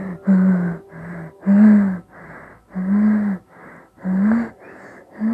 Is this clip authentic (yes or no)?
yes